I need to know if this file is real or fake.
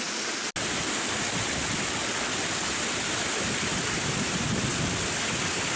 real